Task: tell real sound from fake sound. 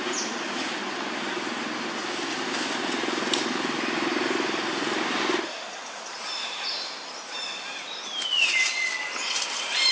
real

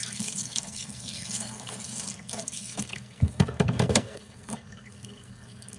fake